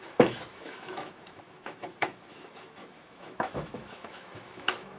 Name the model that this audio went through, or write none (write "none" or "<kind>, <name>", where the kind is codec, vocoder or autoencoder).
autoencoder, DAC-VAE